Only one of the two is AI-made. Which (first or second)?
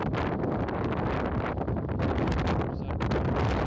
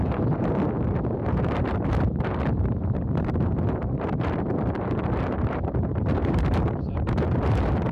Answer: second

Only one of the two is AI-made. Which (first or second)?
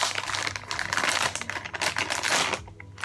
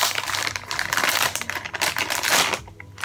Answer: second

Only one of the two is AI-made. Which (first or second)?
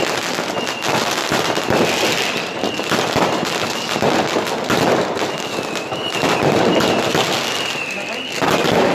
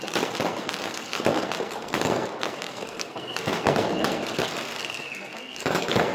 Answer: second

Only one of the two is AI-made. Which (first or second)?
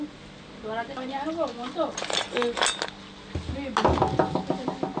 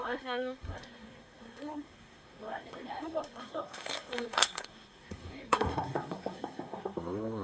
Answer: second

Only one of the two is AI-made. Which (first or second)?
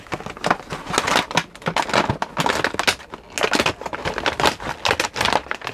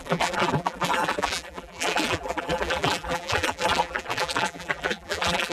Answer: second